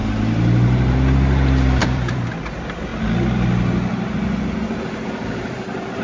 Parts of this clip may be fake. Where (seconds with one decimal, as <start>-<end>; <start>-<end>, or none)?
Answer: 0.0-0.9; 1.8-2.3